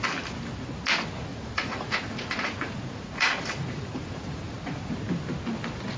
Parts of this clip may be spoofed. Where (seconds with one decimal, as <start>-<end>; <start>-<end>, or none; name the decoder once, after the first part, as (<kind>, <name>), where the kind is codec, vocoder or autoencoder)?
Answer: 1.3-4.9 (vocoder, Vocos)